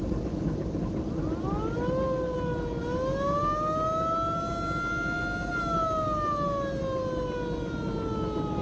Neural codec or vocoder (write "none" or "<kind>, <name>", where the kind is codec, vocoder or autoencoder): none